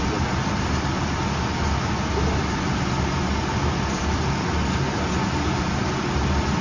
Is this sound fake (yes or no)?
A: no